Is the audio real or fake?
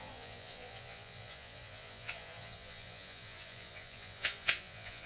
fake